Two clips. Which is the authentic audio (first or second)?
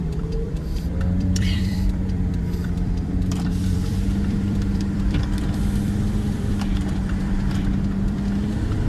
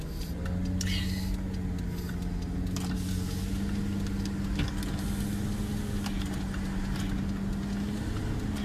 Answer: second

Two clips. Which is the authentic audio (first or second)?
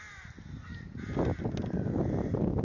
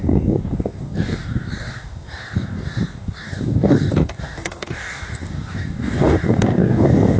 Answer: first